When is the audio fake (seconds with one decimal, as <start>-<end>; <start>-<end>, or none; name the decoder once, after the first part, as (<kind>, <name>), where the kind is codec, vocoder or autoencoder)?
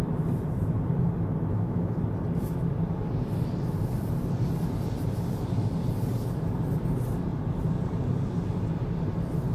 1.5-2.0 (autoencoder, DAC-VAE)